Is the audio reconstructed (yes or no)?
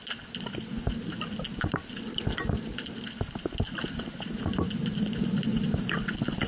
no